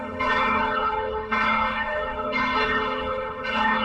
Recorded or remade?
remade